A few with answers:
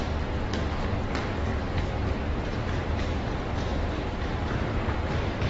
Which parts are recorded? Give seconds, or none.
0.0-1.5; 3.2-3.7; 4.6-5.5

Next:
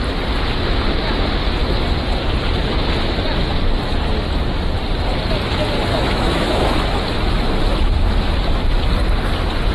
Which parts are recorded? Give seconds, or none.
0.0-5.9; 6.6-9.7

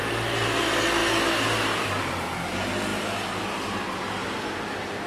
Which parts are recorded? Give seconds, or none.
0.0-5.1

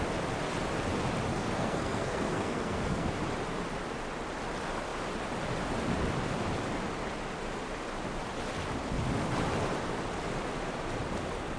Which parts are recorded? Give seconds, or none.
0.0-1.3; 3.1-11.6

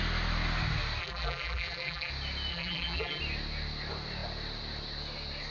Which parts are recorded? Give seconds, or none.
0.0-1.0; 2.1-2.5; 3.2-5.5

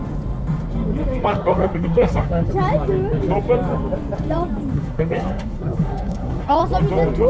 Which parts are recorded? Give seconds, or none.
0.0-1.2; 2.5-4.7; 6.6-7.3